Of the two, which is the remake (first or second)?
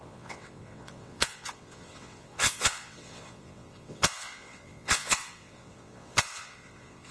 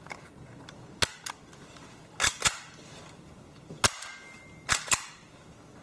first